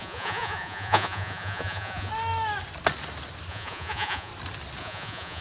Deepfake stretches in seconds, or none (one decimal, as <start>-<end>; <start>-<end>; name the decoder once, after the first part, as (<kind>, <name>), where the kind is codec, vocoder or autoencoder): 0.0-2.1 (vocoder, Vocos); 3.5-4.3; 4.8-5.4